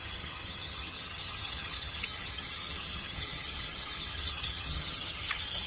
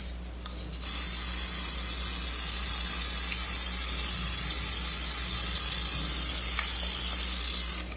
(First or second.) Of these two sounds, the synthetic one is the first